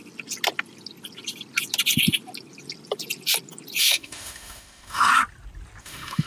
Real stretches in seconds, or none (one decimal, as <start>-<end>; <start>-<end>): 0.0-3.8; 5.1-5.8